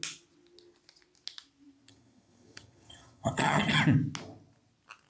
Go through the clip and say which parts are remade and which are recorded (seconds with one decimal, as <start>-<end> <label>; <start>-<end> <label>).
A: 0.0-1.9 recorded; 1.9-3.8 remade; 3.8-5.1 recorded